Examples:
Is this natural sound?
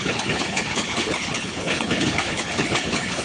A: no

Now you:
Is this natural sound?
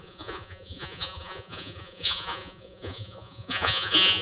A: no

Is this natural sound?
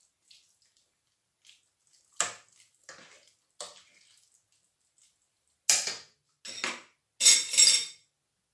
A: yes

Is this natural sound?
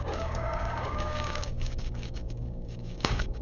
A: no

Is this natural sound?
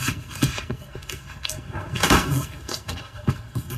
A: no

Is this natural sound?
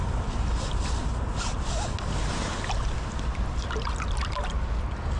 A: yes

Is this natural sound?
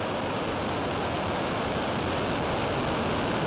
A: yes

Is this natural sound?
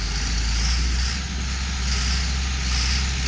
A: yes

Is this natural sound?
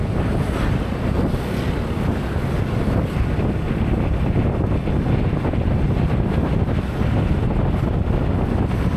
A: yes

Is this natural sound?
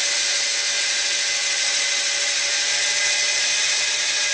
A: yes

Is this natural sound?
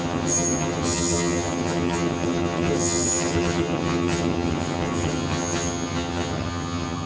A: no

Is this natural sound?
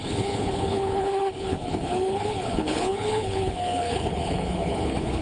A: no